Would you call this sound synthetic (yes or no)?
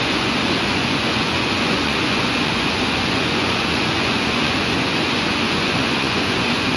yes